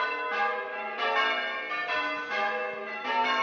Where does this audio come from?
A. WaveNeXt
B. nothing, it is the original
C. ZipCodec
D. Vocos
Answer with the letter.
B